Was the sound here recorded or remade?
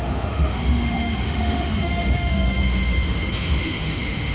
remade